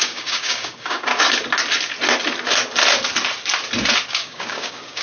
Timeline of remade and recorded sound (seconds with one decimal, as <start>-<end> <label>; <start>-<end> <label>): 0.0-1.1 remade; 1.1-4.1 recorded; 4.1-5.0 remade